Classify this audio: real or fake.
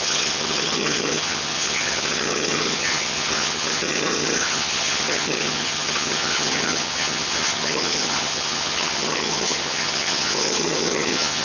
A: fake